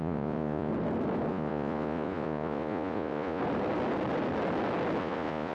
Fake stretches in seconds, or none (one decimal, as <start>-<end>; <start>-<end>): 0.0-0.7; 1.3-3.4; 5.0-5.5